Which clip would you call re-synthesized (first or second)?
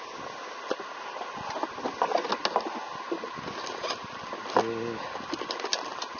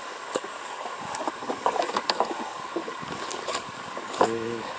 second